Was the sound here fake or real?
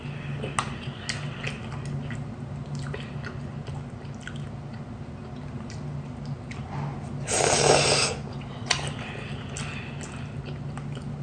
real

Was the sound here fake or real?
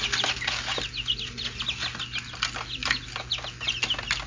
real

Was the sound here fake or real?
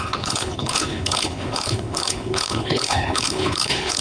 fake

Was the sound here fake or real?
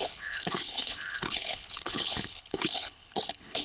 fake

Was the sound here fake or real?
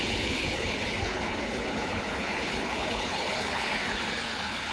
fake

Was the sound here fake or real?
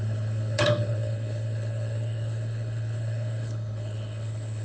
fake